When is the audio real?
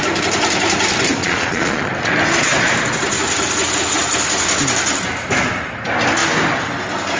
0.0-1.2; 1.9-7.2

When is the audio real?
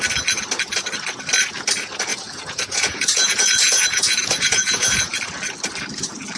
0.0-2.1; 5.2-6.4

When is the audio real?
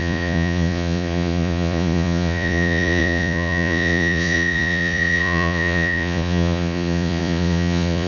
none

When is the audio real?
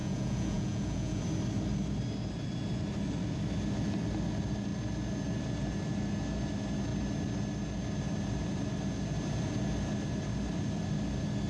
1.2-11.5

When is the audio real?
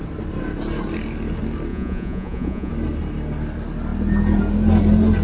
0.0-1.7; 2.7-5.2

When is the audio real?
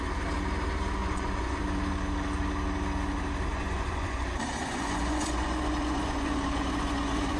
0.0-1.0; 1.6-3.5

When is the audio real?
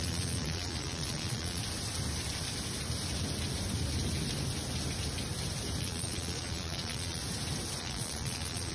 1.6-5.8; 7.2-7.8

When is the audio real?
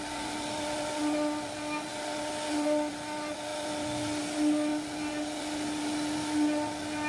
0.0-7.1